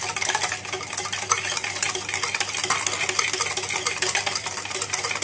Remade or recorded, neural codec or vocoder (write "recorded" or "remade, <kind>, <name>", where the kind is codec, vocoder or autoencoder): recorded